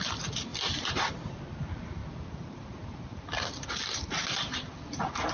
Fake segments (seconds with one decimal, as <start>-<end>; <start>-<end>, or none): 0.0-0.5; 1.1-2.0